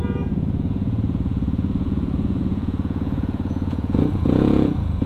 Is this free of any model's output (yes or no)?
no